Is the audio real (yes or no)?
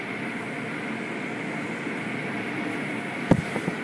yes